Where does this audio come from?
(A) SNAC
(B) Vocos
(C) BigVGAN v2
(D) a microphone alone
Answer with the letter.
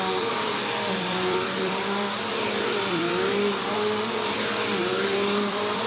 C